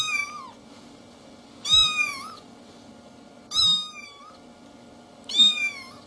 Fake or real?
real